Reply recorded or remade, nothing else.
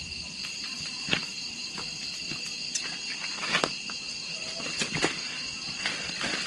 recorded